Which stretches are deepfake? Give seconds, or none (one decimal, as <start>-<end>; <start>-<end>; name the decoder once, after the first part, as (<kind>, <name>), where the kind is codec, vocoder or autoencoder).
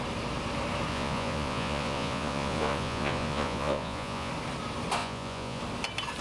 0.9-4.3 (vocoder, Vocos); 5.0-5.6